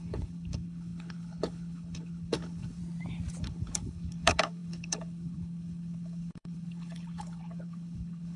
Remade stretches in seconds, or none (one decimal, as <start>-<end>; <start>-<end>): 0.0-2.8; 3.4-8.4